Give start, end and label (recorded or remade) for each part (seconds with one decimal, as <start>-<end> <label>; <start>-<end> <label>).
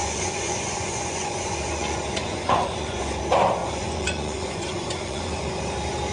0.0-3.2 remade; 3.2-3.6 recorded; 3.6-5.6 remade; 5.6-6.1 recorded